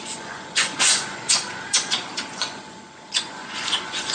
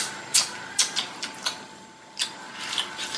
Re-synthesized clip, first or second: first